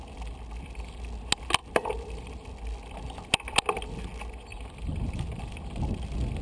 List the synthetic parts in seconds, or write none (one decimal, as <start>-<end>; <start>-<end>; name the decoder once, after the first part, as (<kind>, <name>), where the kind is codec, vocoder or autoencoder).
1.6-2.3 (vocoder, BigVGAN v2); 4.5-5.4